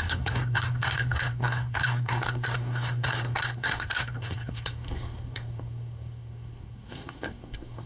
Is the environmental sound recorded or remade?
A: remade